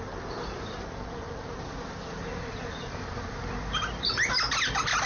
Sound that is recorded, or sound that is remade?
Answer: recorded